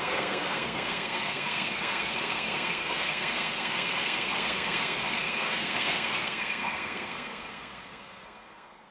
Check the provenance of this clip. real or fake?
fake